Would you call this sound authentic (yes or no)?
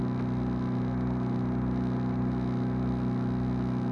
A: yes